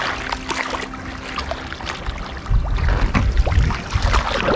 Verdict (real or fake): real